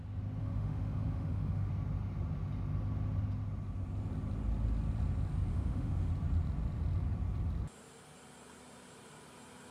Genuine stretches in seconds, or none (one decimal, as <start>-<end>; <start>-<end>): 0.0-0.4; 1.7-5.5; 6.1-9.7